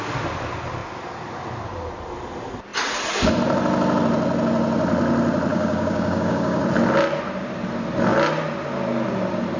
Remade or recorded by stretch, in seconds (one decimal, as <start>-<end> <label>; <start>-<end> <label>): 0.0-5.5 recorded; 5.5-6.6 remade; 6.6-9.6 recorded